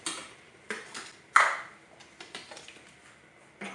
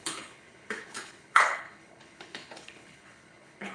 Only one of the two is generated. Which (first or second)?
second